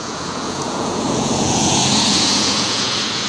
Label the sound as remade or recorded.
remade